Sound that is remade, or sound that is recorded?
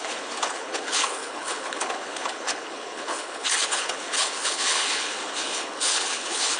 remade